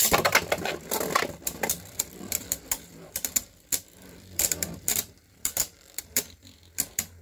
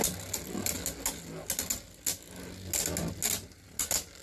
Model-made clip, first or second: first